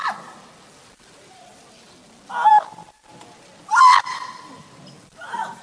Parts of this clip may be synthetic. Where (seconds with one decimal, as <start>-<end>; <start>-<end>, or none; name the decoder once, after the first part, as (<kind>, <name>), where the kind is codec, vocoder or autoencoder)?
0.0-2.5 (vocoder, BigVGAN v2); 3.2-5.6